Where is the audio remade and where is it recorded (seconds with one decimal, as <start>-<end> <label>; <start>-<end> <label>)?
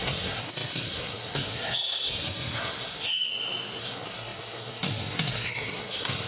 0.0-3.3 remade; 3.3-3.8 recorded; 3.8-6.3 remade